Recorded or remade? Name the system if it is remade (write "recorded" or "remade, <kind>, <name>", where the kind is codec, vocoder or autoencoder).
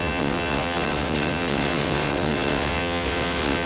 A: remade, vocoder, WaveNeXt